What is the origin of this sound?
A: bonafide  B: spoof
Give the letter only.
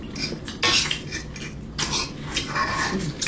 A